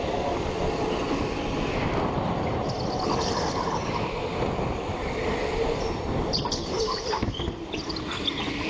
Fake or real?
real